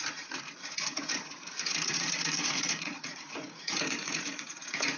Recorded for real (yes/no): no